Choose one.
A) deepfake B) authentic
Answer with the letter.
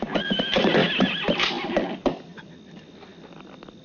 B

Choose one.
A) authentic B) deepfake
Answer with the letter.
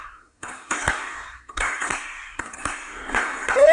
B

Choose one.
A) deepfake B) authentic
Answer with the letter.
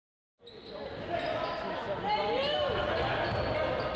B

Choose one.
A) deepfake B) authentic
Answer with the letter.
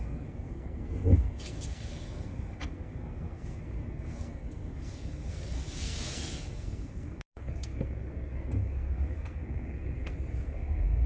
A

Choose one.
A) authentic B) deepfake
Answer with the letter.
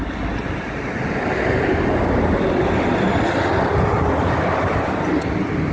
A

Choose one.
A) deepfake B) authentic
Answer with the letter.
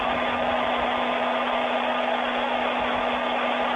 B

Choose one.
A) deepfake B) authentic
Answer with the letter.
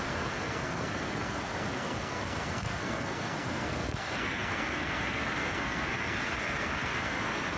A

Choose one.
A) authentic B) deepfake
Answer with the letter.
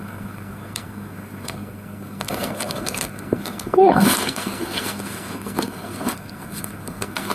B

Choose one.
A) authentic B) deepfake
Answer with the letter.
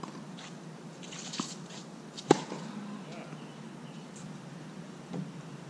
A